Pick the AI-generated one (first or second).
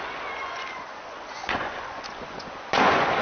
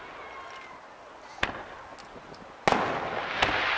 first